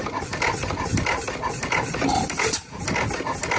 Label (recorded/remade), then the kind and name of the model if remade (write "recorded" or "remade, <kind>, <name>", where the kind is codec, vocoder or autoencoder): recorded